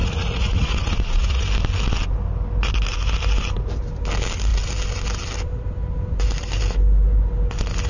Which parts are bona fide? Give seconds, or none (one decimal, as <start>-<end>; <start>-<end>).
1.4-7.9